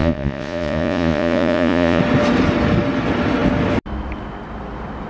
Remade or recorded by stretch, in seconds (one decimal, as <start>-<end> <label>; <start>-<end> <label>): 0.0-2.0 remade; 2.0-5.1 recorded